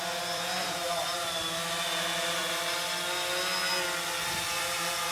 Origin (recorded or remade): recorded